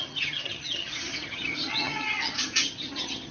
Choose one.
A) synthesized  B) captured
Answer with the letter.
A